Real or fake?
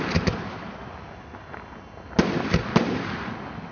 real